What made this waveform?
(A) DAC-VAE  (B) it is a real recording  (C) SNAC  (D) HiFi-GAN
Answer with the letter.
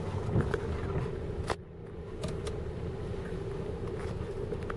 B